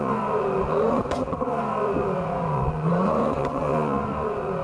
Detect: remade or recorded remade